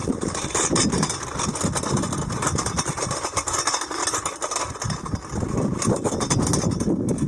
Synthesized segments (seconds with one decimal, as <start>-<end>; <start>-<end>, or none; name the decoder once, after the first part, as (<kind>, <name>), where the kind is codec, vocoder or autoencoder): none